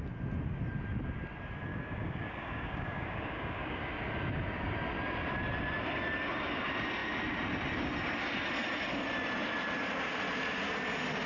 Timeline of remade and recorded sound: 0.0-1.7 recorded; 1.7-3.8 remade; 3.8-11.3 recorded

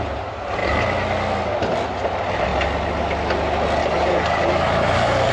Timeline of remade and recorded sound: 0.0-3.8 recorded; 3.8-5.3 remade

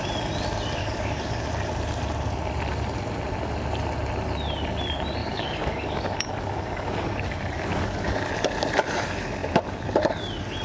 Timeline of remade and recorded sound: 0.0-0.8 recorded; 0.8-1.4 remade; 1.4-5.2 recorded; 5.2-8.3 remade; 8.3-10.6 recorded